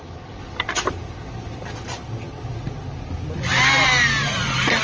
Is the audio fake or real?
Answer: real